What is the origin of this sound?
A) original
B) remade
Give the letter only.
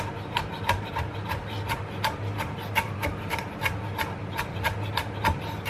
A